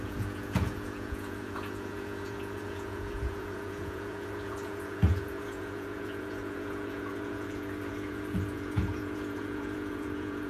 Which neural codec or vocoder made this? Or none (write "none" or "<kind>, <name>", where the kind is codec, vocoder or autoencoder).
vocoder, Vocos